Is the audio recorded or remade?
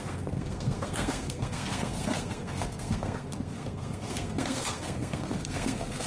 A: remade